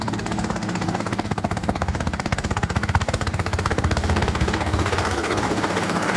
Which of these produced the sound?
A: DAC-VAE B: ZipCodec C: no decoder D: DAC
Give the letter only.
D